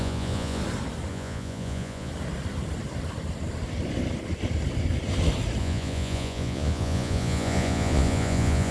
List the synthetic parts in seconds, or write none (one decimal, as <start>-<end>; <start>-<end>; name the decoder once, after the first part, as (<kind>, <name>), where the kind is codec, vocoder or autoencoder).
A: 0.0-0.6 (vocoder, Vocos); 1.1-2.1; 5.6-8.7